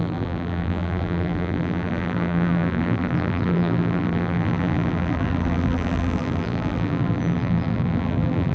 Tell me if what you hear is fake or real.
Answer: fake